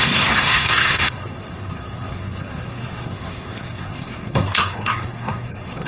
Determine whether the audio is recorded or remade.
remade